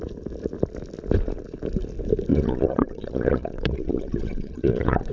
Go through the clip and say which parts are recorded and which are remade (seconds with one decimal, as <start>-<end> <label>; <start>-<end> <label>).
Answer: 0.0-2.3 recorded; 2.3-5.1 remade